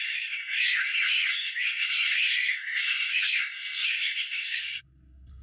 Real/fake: fake